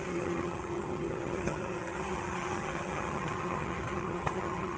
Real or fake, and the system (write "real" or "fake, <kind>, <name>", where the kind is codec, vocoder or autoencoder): fake, vocoder, HiFi-GAN